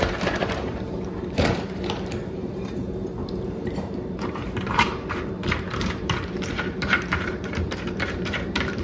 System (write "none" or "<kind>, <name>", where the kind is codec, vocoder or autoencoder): vocoder, BigVGAN v2